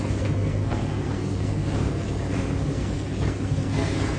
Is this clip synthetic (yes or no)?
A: yes